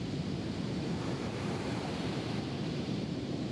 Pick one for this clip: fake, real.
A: fake